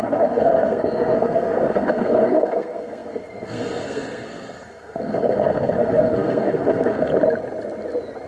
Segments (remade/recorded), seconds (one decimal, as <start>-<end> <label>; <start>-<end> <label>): 0.0-7.1 remade; 7.1-8.3 recorded